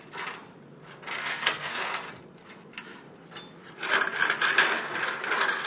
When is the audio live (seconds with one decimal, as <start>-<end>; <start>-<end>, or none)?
0.0-1.2; 1.8-5.7